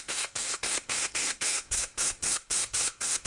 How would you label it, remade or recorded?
remade